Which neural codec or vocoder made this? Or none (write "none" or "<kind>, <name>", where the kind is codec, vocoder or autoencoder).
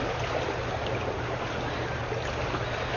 none